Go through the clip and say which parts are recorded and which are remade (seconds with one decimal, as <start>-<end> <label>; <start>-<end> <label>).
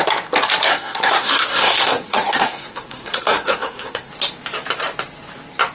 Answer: 0.0-0.7 recorded; 0.7-4.1 remade; 4.1-5.7 recorded